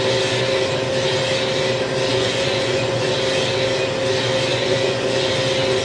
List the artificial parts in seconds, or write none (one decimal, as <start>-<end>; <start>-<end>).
2.1-3.1; 4.5-5.3